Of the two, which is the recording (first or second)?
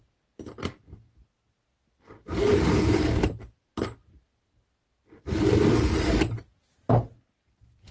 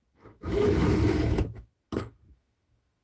first